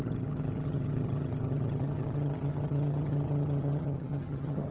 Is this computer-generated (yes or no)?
yes